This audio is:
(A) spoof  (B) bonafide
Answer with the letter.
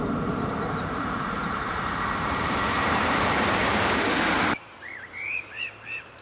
A